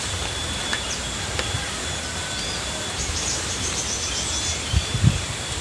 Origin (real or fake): fake